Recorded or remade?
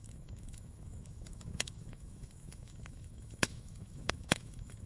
remade